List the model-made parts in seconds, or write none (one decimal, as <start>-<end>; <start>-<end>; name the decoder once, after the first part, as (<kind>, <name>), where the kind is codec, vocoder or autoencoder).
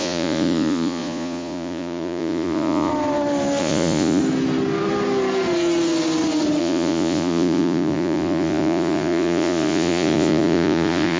0.0-2.9 (vocoder, Vocos); 3.6-4.2; 6.6-11.2